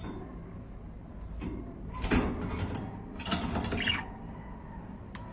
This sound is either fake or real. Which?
real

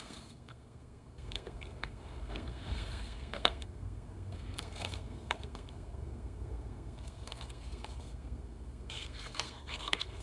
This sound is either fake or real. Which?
fake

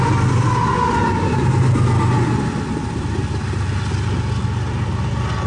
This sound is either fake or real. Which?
real